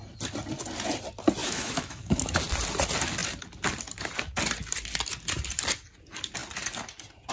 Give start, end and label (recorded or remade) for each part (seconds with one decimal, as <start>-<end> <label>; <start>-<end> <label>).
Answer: 0.0-1.4 recorded; 1.4-2.3 remade; 2.3-7.3 recorded